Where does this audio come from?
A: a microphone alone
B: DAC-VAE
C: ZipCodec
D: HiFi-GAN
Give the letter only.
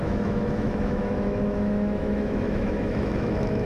B